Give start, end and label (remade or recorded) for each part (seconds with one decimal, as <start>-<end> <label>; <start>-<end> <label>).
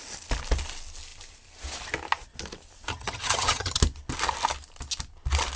0.0-2.9 recorded; 2.9-3.8 remade; 3.8-5.6 recorded